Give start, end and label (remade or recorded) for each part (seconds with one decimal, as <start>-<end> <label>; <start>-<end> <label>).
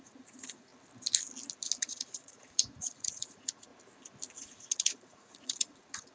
0.0-0.7 remade; 0.7-1.8 recorded; 1.8-3.7 remade; 3.7-4.4 recorded; 4.4-6.1 remade